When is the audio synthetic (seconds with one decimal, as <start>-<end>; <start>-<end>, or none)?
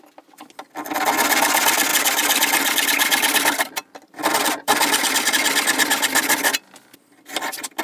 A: 1.9-5.3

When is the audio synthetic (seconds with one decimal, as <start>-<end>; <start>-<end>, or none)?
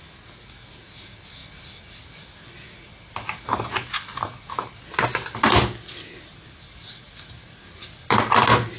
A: none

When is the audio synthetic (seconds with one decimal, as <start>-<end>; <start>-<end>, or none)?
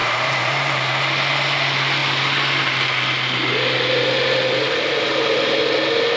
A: 0.0-0.9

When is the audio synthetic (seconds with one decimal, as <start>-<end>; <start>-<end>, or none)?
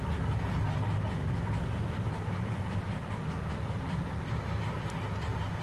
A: 1.2-4.6